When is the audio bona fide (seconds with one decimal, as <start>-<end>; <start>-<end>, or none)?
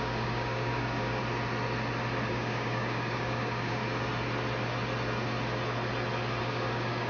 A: 1.2-2.3; 3.8-6.4